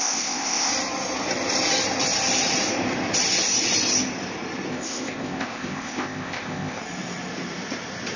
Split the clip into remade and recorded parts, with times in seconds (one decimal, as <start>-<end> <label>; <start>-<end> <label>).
0.0-0.7 remade; 0.7-4.7 recorded; 4.7-6.8 remade; 6.8-8.2 recorded